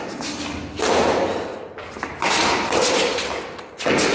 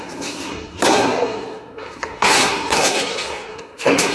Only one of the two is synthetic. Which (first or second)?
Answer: second